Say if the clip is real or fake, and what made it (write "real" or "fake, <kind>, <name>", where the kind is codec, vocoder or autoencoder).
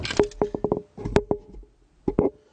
real